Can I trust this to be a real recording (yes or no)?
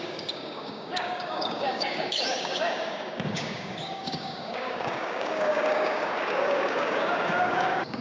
no